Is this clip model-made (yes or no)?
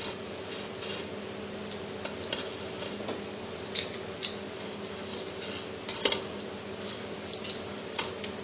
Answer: no